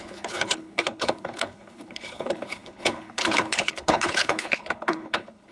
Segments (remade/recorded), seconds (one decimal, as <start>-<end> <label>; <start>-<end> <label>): 0.0-5.5 remade